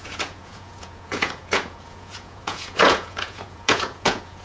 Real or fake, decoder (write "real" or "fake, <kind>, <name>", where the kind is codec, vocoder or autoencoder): fake, vocoder, Vocos